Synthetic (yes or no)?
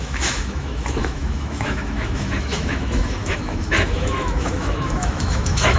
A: yes